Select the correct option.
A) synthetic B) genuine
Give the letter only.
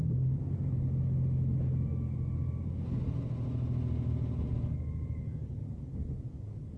B